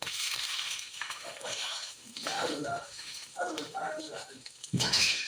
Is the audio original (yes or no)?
no